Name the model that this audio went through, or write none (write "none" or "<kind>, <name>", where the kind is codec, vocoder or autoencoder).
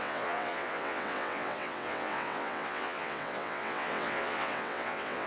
vocoder, WaveNeXt